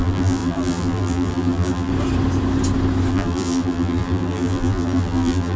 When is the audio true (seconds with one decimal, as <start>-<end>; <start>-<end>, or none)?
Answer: 1.9-3.1